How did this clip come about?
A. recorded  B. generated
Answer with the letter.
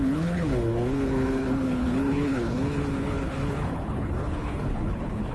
B